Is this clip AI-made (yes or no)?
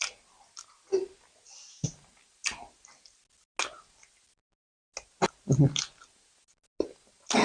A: no